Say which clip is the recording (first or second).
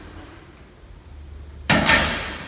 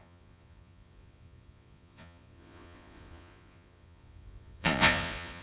first